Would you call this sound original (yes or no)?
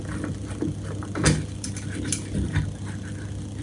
yes